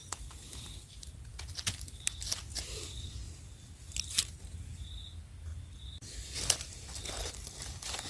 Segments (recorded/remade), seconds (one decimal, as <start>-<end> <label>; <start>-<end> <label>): 0.0-8.1 recorded